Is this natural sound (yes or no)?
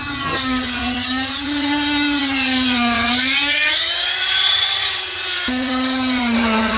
no